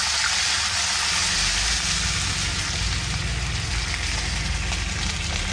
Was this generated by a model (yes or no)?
no